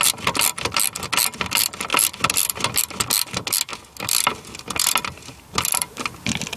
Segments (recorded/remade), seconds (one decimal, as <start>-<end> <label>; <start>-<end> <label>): 0.0-6.6 recorded